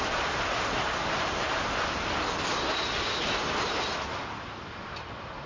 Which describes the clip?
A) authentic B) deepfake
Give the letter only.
A